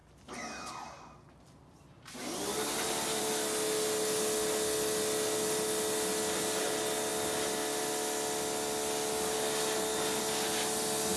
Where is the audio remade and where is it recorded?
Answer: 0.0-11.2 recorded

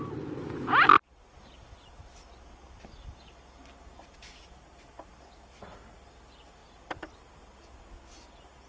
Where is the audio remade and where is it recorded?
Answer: 0.0-8.7 recorded